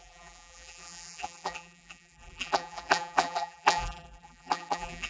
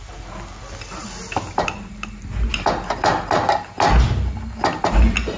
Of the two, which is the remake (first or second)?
first